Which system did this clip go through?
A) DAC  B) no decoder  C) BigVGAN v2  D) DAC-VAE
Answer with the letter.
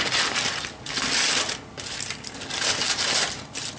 B